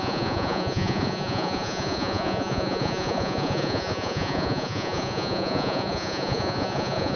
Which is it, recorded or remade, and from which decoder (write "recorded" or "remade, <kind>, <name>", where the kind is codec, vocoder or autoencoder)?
remade, vocoder, Vocos